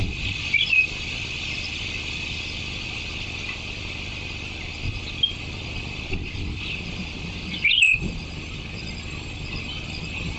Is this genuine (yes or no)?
yes